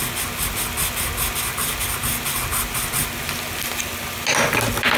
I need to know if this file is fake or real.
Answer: real